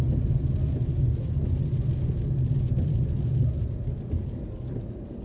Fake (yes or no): no